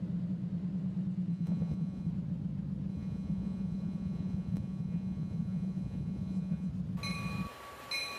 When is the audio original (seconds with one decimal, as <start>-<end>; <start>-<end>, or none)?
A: 0.0-1.3; 2.1-2.9; 6.7-8.2